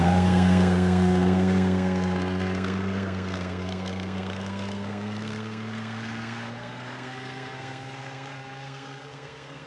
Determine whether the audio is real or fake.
fake